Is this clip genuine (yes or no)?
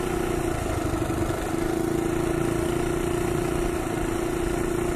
yes